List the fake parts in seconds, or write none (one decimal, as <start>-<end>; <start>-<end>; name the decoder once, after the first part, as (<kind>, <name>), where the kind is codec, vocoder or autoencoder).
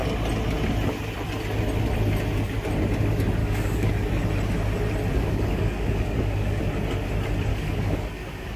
3.4-3.9 (codec, DAC); 5.1-6.6; 7.5-8.6